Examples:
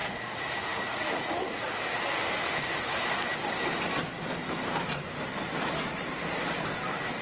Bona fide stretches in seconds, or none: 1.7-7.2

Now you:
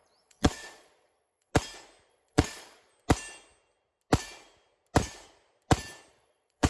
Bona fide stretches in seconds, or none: 1.5-2.1; 2.9-6.1

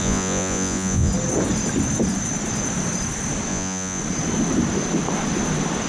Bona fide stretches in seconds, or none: 1.1-3.5; 4.0-5.9

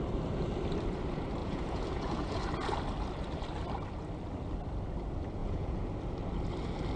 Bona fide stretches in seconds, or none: 0.0-1.4; 2.4-5.4; 5.9-7.0